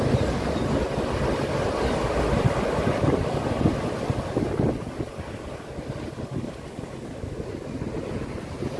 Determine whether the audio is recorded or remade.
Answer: recorded